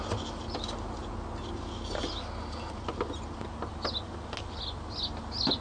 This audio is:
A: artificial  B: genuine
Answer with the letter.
B